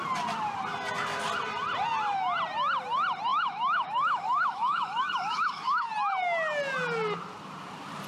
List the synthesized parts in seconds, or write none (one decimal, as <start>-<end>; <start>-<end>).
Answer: 3.3-5.9